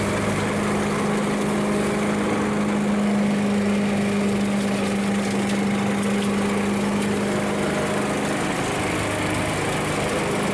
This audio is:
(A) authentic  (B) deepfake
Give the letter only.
A